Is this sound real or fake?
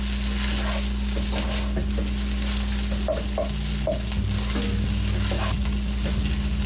real